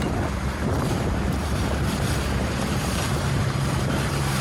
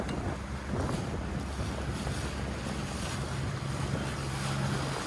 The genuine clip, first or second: second